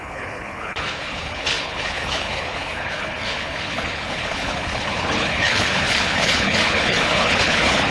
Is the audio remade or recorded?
remade